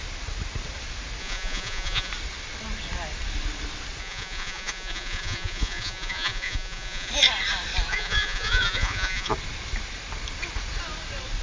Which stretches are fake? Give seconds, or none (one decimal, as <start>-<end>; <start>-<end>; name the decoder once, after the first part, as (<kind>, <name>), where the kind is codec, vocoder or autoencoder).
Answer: 1.2-2.1 (vocoder, Vocos); 4.0-7.1; 7.9-9.3